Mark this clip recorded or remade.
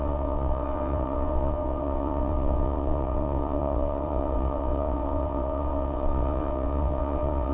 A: remade